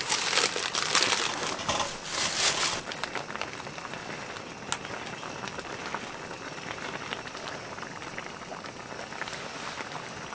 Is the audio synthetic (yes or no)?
no